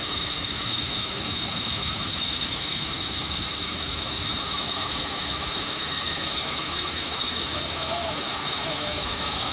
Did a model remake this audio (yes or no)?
yes